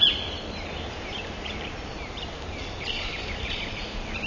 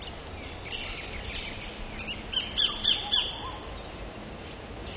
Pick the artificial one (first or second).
first